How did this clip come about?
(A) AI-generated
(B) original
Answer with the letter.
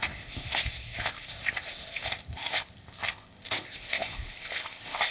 A